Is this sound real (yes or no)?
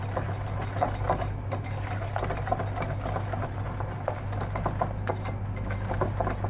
yes